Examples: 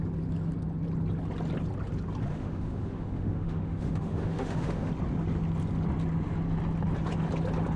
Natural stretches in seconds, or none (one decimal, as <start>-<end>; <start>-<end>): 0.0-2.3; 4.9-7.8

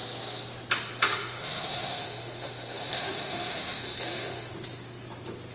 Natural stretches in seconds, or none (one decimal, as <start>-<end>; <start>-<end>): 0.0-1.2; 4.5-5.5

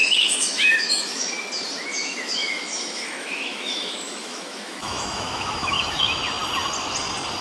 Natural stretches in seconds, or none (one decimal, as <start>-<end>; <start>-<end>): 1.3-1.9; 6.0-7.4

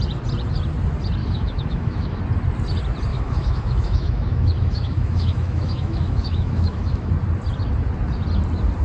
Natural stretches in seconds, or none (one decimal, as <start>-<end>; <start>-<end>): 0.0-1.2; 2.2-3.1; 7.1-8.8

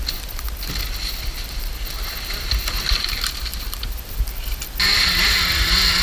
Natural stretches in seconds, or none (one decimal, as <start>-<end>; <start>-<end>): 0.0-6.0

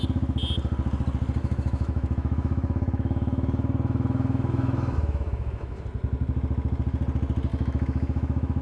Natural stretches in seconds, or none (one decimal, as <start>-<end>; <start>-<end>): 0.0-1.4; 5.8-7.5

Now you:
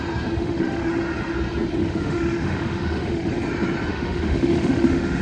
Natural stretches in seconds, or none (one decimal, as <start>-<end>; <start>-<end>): 0.0-0.4; 0.9-1.8; 3.3-3.9